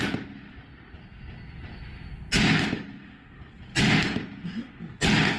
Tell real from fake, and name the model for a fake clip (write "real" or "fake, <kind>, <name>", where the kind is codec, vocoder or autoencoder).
real